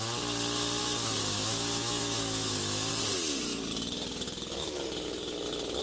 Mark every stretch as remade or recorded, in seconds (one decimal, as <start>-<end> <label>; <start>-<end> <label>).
0.0-0.8 recorded; 0.8-2.9 remade; 2.9-5.8 recorded